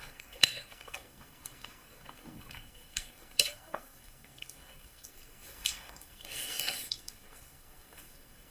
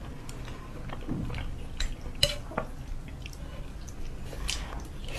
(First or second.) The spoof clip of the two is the first